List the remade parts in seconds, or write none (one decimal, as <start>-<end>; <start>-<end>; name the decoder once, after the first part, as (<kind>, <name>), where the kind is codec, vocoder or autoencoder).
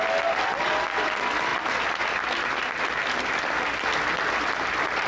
none